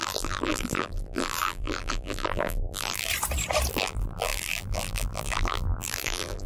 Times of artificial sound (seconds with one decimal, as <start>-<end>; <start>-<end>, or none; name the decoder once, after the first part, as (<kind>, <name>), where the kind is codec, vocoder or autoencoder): 0.0-3.1 (vocoder, BigVGAN v2); 3.7-6.5